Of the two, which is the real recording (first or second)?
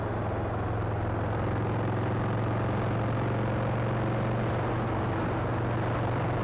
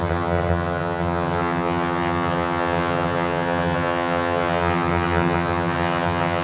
first